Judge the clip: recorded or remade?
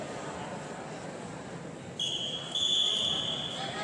recorded